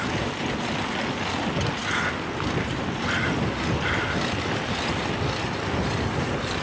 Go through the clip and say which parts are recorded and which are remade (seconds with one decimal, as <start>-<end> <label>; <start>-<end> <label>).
0.0-6.6 recorded